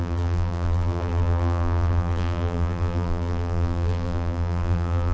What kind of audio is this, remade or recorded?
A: remade